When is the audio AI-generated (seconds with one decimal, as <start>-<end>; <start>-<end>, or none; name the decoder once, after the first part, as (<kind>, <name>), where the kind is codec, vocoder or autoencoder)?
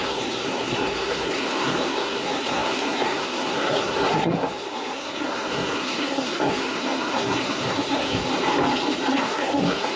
0.0-8.3 (codec, SNAC); 9.1-10.0